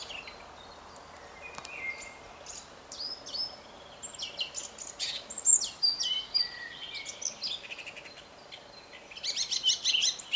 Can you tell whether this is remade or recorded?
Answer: recorded